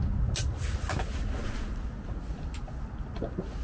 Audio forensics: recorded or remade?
recorded